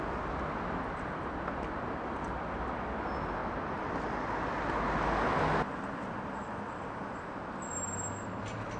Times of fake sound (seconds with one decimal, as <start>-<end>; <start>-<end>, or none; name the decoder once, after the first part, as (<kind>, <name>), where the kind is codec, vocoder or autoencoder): 3.4-3.9 (vocoder, BigVGAN v2)

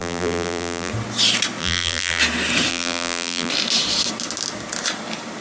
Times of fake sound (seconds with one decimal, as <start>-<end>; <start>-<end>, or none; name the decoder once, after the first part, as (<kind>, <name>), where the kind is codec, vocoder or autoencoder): 0.0-0.9 (vocoder, BigVGAN v2); 1.6-2.2; 2.7-3.5

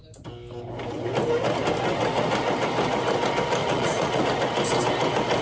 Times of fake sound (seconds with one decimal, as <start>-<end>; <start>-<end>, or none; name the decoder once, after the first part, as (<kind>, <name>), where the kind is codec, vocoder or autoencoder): 3.6-4.2 (vocoder, Vocos)